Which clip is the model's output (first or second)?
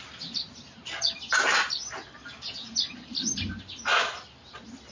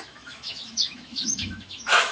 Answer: second